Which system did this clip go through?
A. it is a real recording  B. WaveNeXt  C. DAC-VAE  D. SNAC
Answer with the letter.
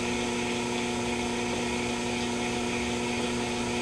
A